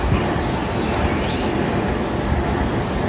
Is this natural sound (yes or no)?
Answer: yes